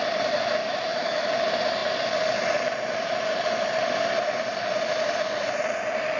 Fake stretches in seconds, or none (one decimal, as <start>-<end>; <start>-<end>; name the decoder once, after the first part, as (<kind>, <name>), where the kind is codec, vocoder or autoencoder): 0.6-1.3 (autoencoder, DAC-VAE)